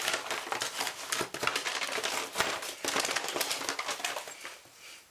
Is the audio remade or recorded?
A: recorded